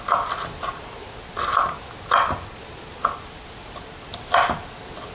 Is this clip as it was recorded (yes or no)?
yes